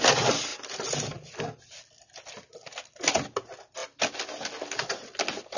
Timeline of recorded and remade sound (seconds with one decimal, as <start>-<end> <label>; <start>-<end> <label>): 0.0-5.6 recorded